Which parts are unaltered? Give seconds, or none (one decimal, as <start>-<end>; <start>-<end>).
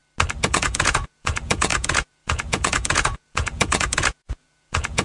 0.0-0.5